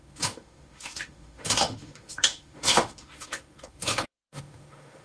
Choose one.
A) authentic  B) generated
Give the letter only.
B